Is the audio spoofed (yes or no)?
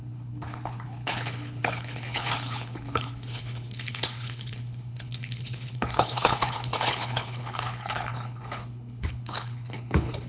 yes